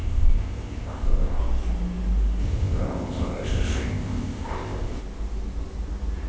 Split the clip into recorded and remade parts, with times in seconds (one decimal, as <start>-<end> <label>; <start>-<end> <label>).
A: 0.0-1.4 remade; 1.4-2.4 recorded; 2.4-5.0 remade; 5.0-6.3 recorded